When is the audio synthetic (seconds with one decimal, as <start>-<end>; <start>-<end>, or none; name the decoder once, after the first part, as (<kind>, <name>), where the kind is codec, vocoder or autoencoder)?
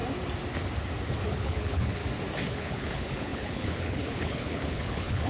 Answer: 1.3-2.0 (codec, HILCodec); 2.5-5.3